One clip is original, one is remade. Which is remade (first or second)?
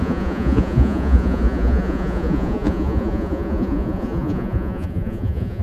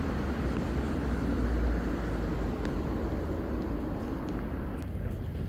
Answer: first